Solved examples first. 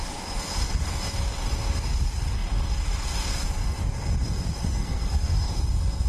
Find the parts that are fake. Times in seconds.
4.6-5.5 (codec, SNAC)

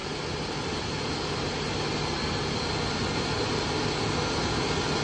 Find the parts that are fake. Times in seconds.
none

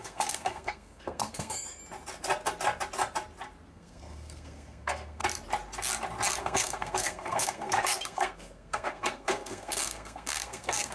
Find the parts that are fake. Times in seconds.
0.0-1.8 (codec, SNAC); 3.7-5.2; 6.4-10.9

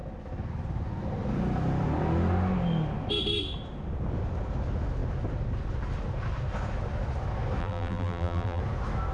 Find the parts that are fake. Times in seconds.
7.6-8.6 (vocoder, BigVGAN v2)

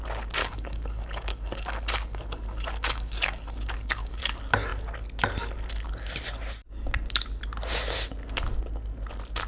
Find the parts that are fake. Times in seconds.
0.4-4.2 (codec, DAC)

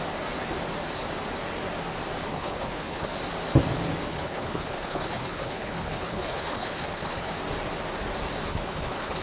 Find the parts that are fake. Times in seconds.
2.3-3.1 (codec, HILCodec); 4.1-7.3; 8.5-9.2

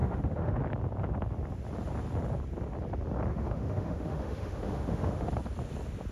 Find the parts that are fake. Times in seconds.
0.0-0.6 (autoencoder, DAC-VAE); 3.3-5.3